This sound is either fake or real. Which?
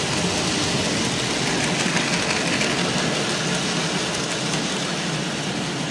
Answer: real